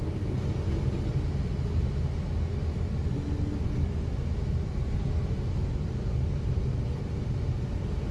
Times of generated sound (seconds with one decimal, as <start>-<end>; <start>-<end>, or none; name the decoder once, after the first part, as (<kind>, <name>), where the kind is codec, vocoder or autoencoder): none